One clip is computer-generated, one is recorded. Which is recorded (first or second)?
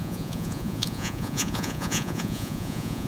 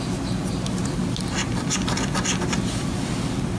second